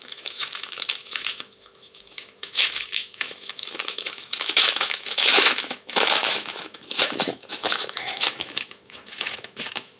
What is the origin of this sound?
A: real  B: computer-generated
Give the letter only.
B